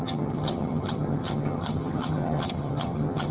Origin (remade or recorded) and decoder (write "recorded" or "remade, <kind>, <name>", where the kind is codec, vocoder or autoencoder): remade, vocoder, HiFi-GAN